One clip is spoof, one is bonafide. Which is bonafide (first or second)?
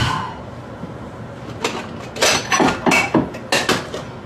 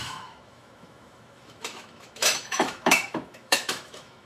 first